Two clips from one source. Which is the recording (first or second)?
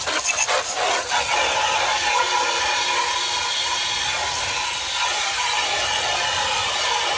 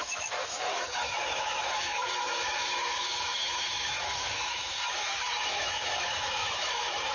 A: first